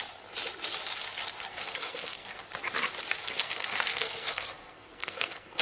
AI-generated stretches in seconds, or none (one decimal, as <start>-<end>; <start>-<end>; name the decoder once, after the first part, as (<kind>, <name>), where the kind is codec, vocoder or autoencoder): 1.5-2.4 (codec, SNAC); 3.2-5.6